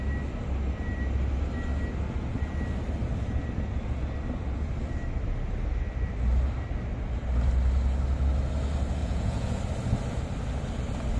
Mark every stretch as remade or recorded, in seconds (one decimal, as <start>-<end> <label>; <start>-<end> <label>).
0.0-9.0 recorded; 9.0-9.6 remade; 9.6-11.2 recorded